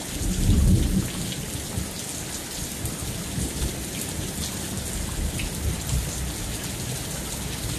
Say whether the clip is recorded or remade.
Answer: recorded